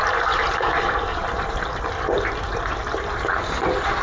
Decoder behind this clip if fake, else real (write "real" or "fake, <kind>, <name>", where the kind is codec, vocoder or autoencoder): fake, vocoder, BigVGAN v2